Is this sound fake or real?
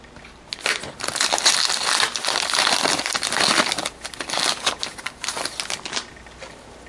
real